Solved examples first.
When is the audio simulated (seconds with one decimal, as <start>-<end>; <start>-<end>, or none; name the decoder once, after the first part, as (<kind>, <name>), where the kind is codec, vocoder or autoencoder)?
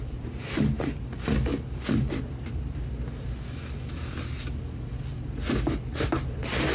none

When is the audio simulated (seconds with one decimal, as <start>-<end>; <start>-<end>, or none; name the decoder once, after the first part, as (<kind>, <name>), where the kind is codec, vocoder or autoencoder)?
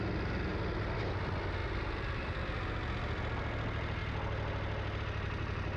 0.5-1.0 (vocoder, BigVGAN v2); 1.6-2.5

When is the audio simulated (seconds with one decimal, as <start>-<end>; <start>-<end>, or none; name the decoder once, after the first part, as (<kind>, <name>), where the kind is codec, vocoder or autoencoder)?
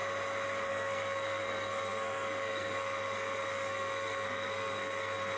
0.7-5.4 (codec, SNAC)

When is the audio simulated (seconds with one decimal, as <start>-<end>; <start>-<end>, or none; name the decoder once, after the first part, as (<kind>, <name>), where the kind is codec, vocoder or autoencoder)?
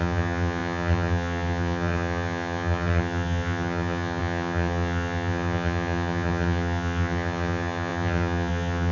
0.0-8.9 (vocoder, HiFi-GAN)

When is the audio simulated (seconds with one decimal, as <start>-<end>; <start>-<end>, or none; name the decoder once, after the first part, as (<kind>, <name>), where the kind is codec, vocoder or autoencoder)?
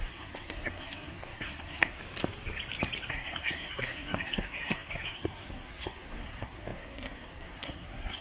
0.0-2.0 (codec, SNAC); 3.1-8.2